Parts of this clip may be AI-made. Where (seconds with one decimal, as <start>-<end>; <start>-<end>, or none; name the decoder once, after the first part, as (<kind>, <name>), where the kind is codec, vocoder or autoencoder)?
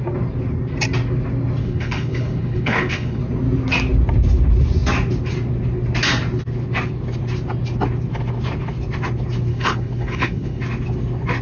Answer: 1.6-3.2 (codec, HILCodec); 9.5-10.6